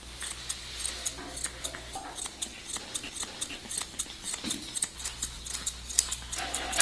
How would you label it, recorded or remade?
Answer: recorded